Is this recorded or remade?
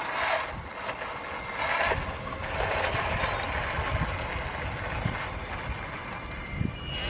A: recorded